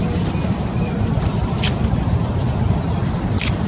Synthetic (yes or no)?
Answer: yes